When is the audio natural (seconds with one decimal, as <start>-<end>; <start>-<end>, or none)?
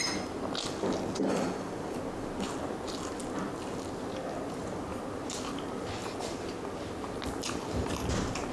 0.0-8.5